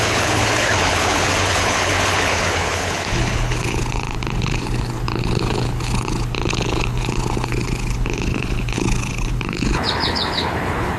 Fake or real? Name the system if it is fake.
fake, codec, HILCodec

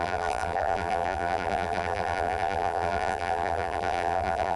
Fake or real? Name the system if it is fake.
fake, vocoder, BigVGAN v2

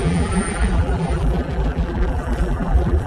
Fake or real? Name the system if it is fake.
fake, vocoder, BigVGAN v2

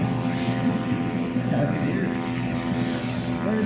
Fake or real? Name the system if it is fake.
real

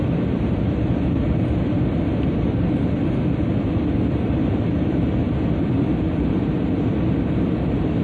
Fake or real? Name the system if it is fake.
real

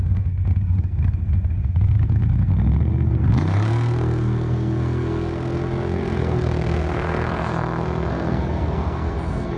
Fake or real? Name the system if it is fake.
fake, codec, SNAC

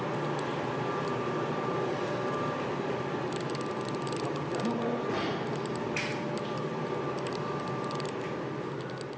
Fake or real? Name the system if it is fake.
real